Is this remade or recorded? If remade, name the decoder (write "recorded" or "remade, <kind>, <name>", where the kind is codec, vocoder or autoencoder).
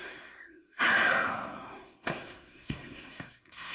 remade, codec, SNAC